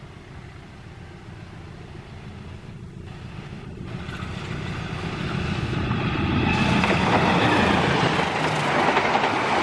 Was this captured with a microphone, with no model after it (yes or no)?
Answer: yes